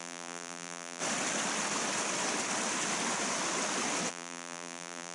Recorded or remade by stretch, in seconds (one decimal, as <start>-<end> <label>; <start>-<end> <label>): 0.0-1.0 remade; 1.0-4.1 recorded; 4.1-5.1 remade